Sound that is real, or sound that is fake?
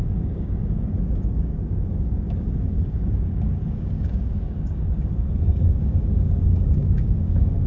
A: fake